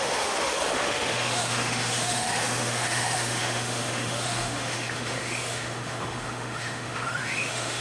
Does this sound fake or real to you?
fake